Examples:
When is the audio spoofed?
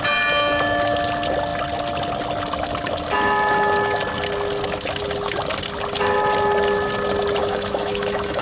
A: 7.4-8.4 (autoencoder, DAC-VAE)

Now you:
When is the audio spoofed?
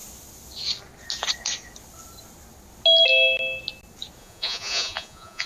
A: 4.2-5.5 (vocoder, Vocos)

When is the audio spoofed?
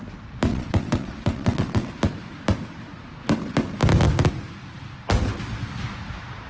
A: 0.5-1.9 (vocoder, WaveNeXt)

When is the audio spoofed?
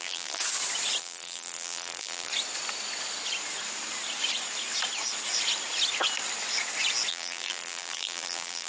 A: 0.0-0.4 (vocoder, BigVGAN v2); 1.0-2.3; 7.1-8.7